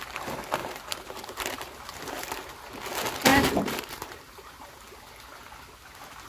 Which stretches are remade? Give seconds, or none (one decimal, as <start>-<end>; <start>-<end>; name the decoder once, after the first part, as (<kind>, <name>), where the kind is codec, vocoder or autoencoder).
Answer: 0.6-2.5 (vocoder, BigVGAN v2); 3.3-4.8